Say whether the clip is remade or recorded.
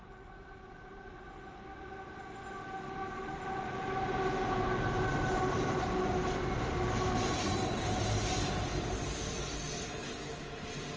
recorded